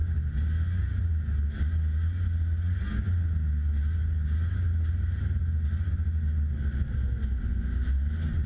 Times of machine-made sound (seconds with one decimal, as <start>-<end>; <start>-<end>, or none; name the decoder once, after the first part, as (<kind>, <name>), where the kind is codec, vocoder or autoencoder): none